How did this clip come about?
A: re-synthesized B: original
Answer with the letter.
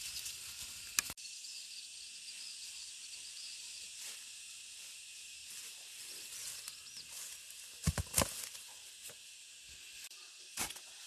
B